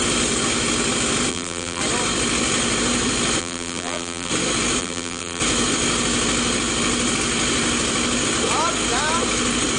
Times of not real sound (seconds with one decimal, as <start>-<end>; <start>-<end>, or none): 1.3-1.8; 3.4-4.3; 4.8-5.4